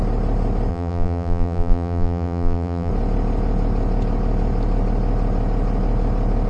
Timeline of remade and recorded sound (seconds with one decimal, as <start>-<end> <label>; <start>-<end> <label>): 0.0-0.7 recorded; 0.7-2.9 remade; 2.9-6.5 recorded